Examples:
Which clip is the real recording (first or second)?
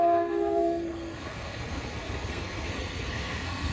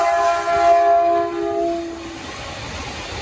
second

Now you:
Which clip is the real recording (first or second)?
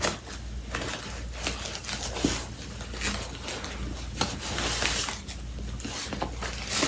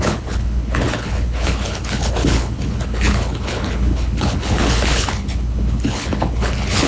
first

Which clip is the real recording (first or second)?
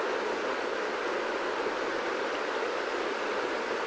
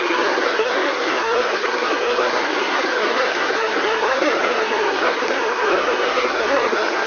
first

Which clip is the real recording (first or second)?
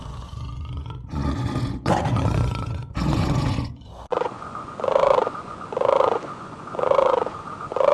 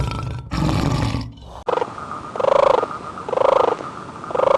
second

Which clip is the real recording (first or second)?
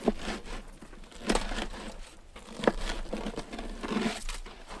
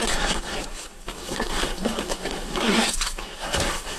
first